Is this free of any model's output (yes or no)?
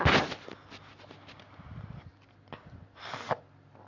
yes